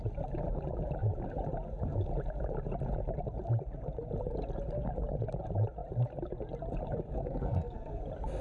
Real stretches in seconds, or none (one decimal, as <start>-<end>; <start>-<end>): 0.0-7.1; 8.0-8.4